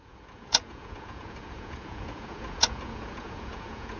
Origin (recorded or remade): remade